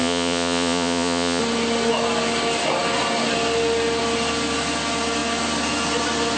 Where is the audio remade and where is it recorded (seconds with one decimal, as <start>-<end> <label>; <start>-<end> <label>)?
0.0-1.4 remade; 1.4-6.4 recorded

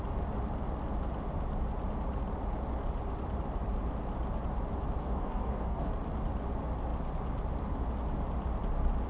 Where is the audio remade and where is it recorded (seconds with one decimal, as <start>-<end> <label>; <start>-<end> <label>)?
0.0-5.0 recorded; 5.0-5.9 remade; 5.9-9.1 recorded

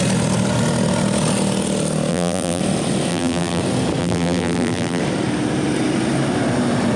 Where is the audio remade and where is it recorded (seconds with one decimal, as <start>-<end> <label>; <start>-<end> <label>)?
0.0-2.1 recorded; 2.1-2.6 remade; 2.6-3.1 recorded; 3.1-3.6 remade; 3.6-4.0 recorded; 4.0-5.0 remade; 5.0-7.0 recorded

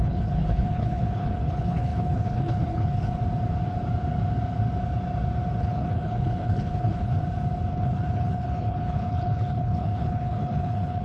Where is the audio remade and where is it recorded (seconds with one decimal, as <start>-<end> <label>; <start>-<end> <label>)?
0.0-3.2 remade; 3.2-5.6 recorded; 5.6-7.2 remade; 7.2-7.7 recorded; 7.7-11.0 remade

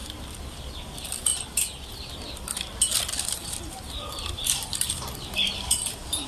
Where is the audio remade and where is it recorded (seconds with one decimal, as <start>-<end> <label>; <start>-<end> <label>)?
0.0-0.7 remade; 0.7-3.4 recorded; 3.4-5.8 remade; 5.8-6.3 recorded

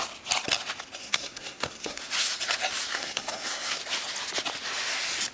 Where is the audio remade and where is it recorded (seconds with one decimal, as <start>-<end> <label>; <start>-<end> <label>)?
0.0-1.0 recorded; 1.0-2.0 remade; 2.0-2.9 recorded; 2.9-3.8 remade; 3.8-5.3 recorded